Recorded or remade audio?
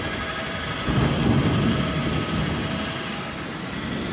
recorded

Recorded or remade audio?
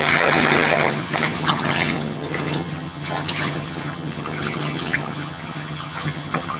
remade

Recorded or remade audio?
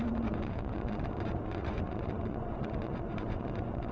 remade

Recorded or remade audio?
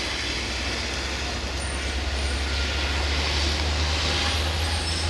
recorded